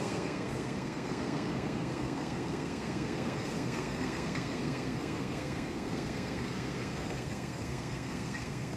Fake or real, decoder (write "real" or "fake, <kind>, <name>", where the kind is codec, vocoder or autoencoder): fake, codec, SNAC